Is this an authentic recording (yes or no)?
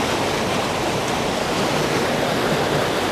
no